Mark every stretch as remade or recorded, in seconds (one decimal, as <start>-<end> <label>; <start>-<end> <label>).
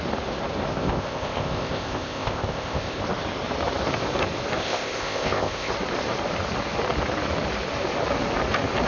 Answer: 0.0-0.7 recorded; 0.7-3.0 remade; 3.0-4.6 recorded; 4.6-5.7 remade; 5.7-8.9 recorded